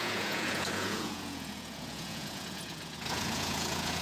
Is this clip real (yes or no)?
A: no